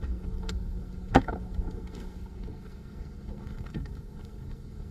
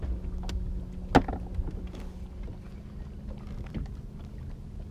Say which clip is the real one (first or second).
second